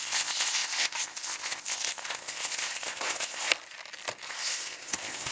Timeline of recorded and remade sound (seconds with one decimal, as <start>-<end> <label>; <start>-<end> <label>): 0.0-3.5 remade; 3.5-4.3 recorded; 4.3-5.3 remade